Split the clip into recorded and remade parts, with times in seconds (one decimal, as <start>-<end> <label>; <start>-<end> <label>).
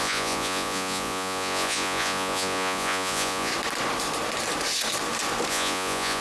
0.0-3.5 remade; 3.5-5.5 recorded; 5.5-6.2 remade